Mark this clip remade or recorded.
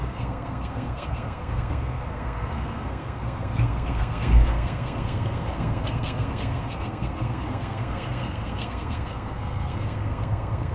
remade